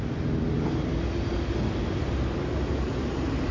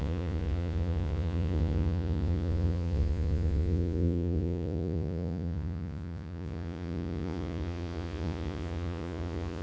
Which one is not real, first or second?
second